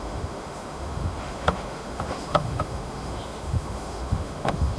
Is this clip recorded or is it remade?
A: remade